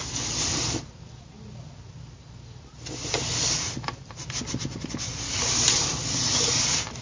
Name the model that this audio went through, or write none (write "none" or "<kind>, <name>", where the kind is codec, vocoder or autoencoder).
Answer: none